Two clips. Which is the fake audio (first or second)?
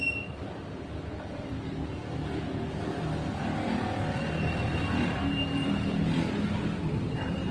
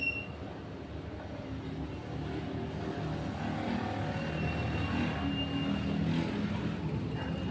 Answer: first